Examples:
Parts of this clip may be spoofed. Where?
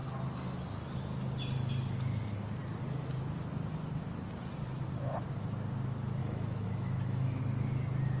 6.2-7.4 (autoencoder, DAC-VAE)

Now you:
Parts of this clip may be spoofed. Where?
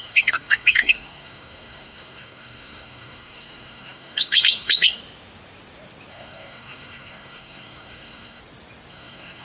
0.0-5.0 (codec, SNAC); 6.1-8.4; 8.9-9.4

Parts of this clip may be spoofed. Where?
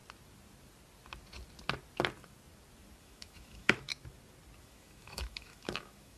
3.0-3.9 (autoencoder, DAC-VAE); 4.6-6.2